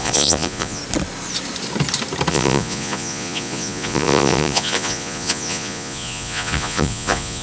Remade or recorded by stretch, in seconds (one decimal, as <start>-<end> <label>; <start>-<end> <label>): 0.0-0.8 remade; 0.8-2.3 recorded; 2.3-7.4 remade